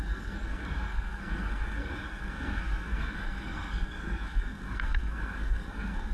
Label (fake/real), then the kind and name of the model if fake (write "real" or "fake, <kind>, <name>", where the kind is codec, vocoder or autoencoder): fake, codec, SNAC